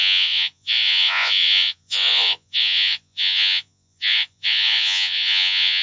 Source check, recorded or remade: remade